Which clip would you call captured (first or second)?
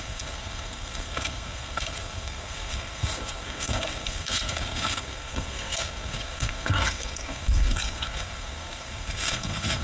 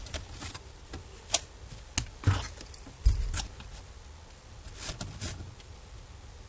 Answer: second